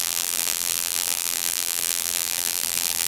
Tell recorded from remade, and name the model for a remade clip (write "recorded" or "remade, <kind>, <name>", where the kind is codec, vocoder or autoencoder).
remade, vocoder, BigVGAN v2